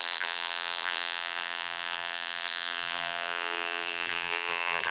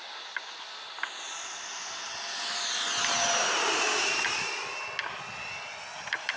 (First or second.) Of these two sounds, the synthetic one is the first